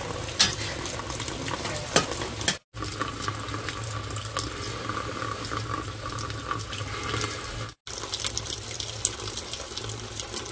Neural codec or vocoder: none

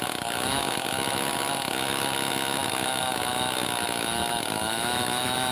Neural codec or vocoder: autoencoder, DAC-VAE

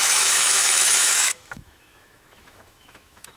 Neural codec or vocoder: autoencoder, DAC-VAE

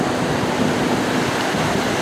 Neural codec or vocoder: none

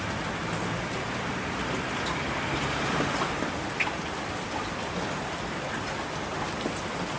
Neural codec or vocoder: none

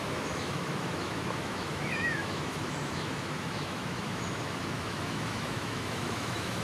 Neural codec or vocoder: autoencoder, DAC-VAE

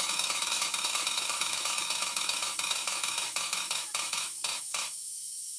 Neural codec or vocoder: autoencoder, DAC-VAE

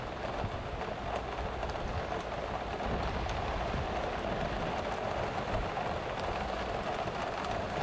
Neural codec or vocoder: none